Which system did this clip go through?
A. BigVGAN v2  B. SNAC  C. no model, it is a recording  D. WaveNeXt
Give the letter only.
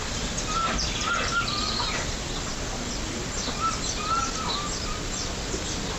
C